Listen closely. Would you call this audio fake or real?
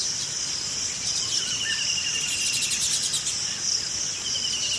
real